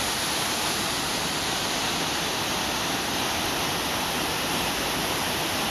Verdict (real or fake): real